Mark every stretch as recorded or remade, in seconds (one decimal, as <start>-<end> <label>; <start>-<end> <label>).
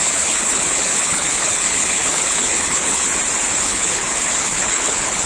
0.0-3.1 remade; 3.1-3.6 recorded; 3.6-5.3 remade